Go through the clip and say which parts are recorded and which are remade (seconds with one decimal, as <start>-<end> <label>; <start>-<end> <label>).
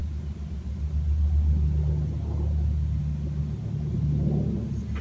0.0-5.0 recorded